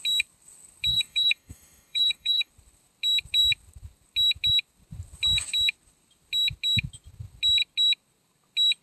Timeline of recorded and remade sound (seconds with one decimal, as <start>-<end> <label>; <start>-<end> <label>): 0.0-0.9 recorded; 0.9-2.5 remade; 2.5-8.8 recorded